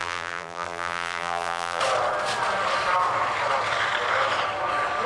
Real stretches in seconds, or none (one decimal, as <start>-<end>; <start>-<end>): 1.8-5.1